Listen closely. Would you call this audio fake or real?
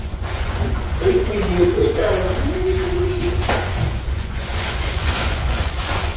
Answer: fake